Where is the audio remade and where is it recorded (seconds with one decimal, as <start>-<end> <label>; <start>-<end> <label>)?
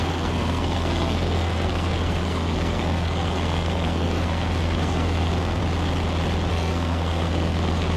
0.0-5.6 remade; 5.6-6.5 recorded; 6.5-8.0 remade